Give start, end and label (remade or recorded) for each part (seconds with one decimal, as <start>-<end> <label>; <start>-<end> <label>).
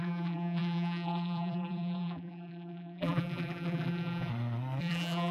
0.0-4.3 remade; 4.3-4.8 recorded; 4.8-5.3 remade